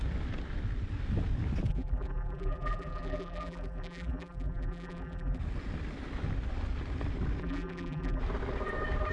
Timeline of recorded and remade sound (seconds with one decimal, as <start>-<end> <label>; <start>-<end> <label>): 0.0-1.7 recorded; 1.7-5.4 remade; 5.4-7.4 recorded; 7.4-8.2 remade; 8.2-9.1 recorded